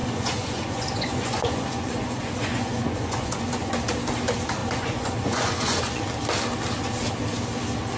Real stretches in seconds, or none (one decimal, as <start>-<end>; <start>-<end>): 3.8-4.6; 6.0-8.0